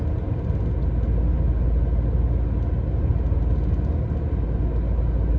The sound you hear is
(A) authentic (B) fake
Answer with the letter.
A